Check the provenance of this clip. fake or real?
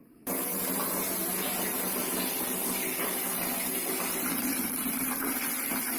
real